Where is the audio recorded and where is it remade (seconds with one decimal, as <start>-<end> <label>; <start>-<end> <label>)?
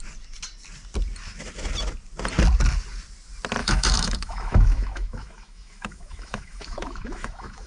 0.0-3.6 recorded; 3.6-7.7 remade